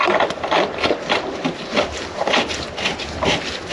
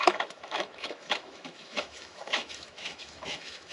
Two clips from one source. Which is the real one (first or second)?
first